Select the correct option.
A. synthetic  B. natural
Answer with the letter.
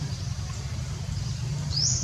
A